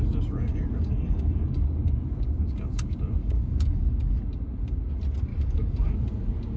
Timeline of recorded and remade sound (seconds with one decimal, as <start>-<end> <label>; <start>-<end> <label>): 0.0-0.5 recorded; 0.5-1.8 remade; 1.8-3.2 recorded; 3.2-4.2 remade; 4.2-5.3 recorded; 5.3-5.9 remade; 5.9-6.6 recorded

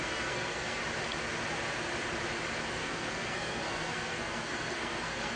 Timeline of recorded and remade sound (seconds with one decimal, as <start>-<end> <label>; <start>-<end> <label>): 0.0-0.8 remade; 0.8-2.7 recorded; 2.7-5.4 remade